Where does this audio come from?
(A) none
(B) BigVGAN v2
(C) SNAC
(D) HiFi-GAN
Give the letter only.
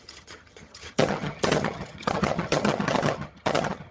D